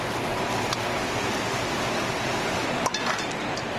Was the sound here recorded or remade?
recorded